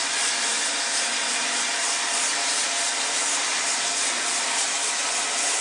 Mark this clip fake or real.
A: real